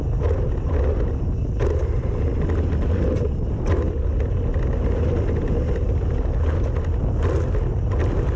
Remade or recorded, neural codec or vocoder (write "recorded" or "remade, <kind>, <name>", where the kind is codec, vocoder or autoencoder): recorded